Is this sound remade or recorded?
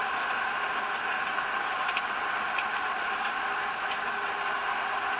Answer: recorded